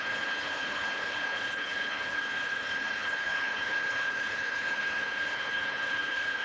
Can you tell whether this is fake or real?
fake